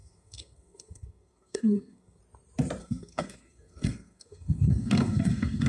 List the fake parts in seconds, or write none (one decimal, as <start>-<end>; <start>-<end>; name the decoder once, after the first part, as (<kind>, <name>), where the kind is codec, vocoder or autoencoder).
0.0-2.2 (codec, SNAC); 2.8-5.7